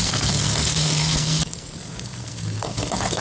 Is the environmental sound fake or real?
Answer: fake